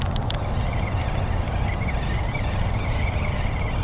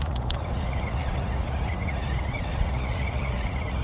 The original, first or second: first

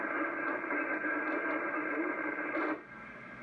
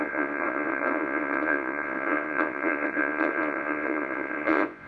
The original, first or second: first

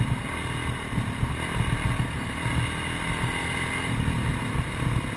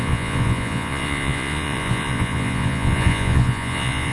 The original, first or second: first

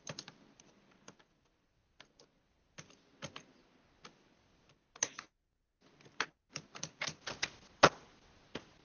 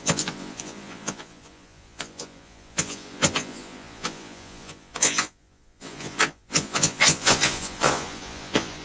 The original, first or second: first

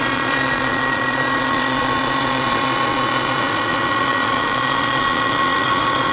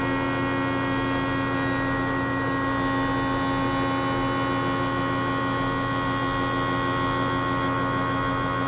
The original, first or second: second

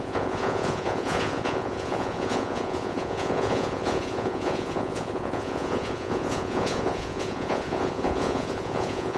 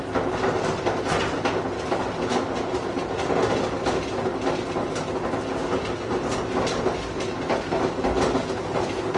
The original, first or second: second